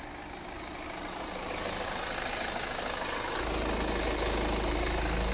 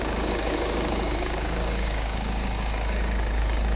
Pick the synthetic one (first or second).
second